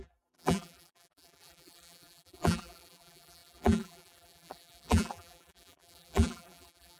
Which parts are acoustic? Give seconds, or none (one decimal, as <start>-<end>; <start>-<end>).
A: none